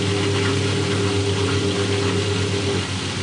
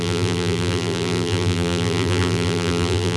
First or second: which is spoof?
second